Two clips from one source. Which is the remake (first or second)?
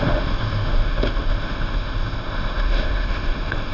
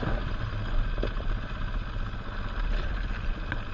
first